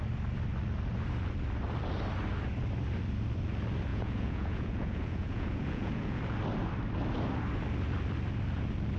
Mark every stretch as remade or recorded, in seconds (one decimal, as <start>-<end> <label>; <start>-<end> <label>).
0.0-3.9 recorded; 3.9-6.2 remade; 6.2-9.0 recorded